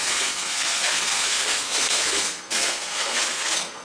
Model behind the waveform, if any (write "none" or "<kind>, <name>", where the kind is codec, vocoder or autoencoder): codec, SNAC